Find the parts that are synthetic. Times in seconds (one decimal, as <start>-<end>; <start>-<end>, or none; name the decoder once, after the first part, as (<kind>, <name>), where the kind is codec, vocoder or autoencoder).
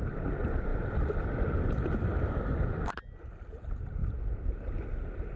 4.0-4.7 (vocoder, BigVGAN v2)